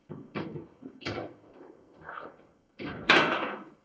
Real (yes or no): no